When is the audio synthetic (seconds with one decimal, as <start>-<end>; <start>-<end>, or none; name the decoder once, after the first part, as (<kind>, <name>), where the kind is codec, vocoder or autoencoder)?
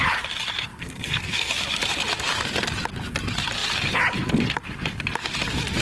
0.7-1.5 (codec, SNAC)